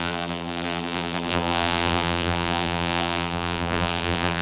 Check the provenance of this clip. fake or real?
fake